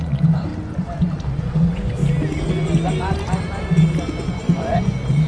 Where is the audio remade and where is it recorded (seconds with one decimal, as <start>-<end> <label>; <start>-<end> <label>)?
0.0-0.5 remade; 0.5-1.4 recorded; 1.4-2.0 remade; 2.0-4.3 recorded; 4.3-5.3 remade